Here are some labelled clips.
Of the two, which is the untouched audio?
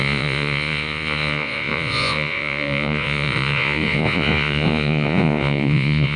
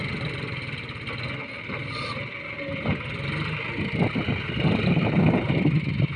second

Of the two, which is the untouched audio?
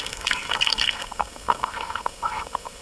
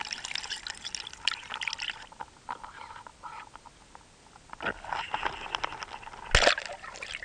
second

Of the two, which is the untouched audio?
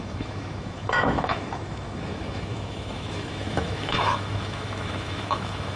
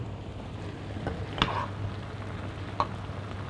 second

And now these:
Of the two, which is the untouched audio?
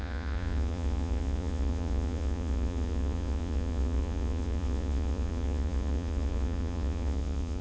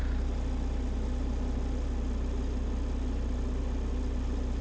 second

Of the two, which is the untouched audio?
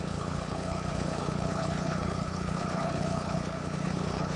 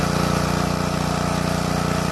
second